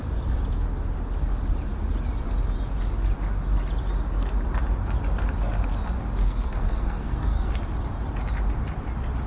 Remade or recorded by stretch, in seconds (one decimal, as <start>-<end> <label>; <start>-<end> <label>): 0.0-6.2 recorded; 6.2-7.5 remade; 7.5-9.3 recorded